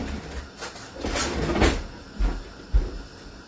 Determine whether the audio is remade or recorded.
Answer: recorded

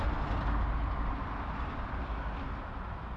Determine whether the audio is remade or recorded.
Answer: recorded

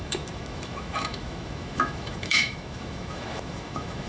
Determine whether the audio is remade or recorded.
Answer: remade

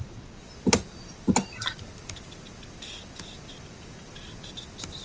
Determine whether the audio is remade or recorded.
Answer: recorded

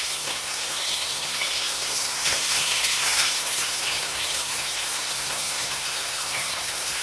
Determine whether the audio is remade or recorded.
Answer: remade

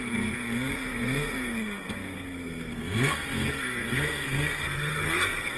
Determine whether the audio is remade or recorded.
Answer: remade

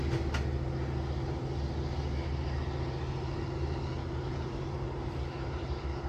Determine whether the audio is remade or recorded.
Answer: recorded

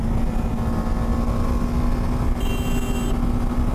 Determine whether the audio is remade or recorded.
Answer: recorded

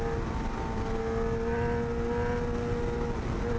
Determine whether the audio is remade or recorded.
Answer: recorded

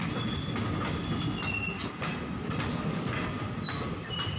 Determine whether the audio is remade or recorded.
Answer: recorded